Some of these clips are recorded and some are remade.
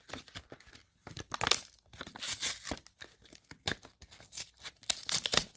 recorded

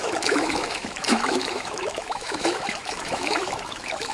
remade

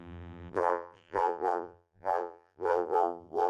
remade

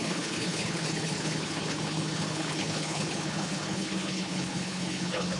remade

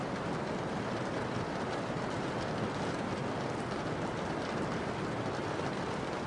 recorded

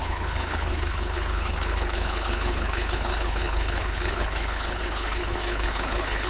remade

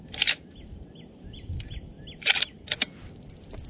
recorded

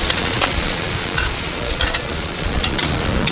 remade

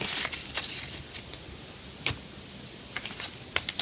recorded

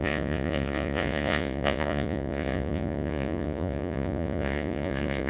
remade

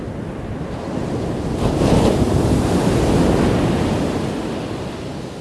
recorded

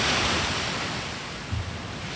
recorded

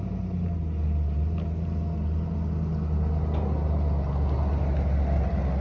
recorded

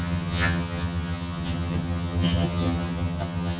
remade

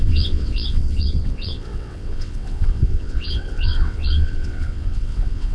remade